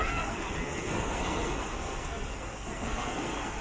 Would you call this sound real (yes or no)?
no